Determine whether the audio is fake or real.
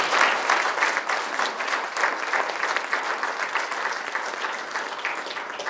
real